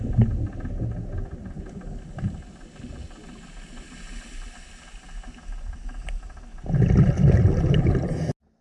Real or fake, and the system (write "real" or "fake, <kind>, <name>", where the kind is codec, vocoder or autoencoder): real